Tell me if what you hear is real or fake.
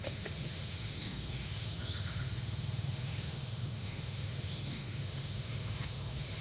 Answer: fake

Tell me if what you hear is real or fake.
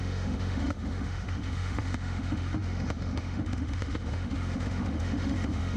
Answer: fake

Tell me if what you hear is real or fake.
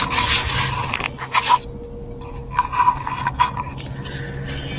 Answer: real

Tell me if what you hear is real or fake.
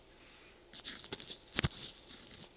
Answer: real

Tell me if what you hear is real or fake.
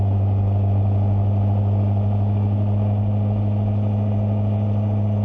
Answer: real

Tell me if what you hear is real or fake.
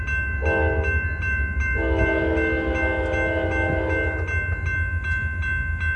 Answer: real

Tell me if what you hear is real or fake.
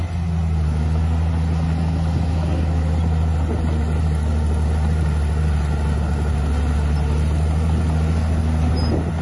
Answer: real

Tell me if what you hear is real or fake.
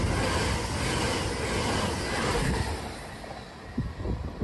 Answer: real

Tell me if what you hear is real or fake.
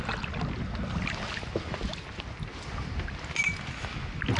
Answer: real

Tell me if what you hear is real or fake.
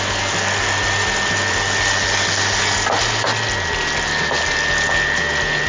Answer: real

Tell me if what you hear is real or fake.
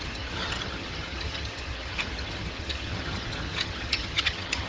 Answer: fake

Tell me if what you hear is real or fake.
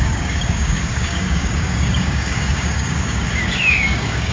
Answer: fake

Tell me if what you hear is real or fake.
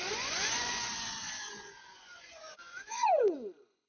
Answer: fake